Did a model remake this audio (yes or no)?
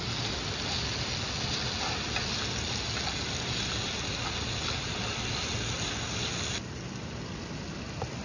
no